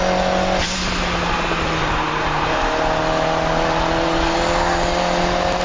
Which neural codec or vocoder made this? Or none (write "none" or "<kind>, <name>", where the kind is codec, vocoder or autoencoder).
none